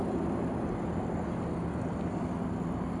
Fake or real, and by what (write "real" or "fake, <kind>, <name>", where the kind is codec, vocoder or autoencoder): real